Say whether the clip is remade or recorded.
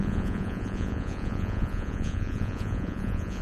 remade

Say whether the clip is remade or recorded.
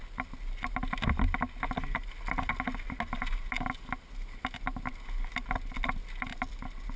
recorded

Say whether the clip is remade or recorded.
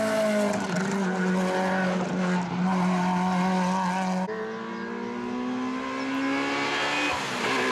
recorded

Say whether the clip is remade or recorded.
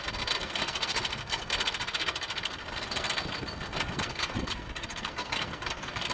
remade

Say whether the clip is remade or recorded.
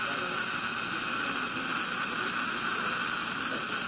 recorded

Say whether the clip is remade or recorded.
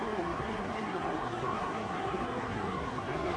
remade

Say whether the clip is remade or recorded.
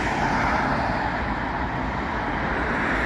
recorded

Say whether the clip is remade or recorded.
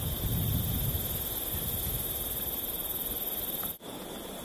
recorded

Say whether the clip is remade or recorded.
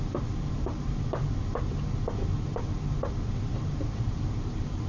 recorded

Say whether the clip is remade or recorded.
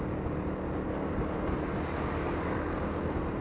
recorded